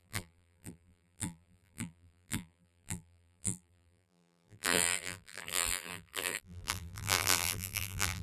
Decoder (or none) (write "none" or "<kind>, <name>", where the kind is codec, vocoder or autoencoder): vocoder, BigVGAN v2